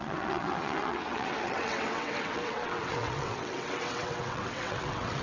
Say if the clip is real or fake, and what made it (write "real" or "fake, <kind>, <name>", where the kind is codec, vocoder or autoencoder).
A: fake, vocoder, WaveNeXt